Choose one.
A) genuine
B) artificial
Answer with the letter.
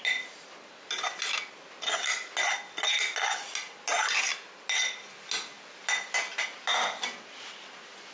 A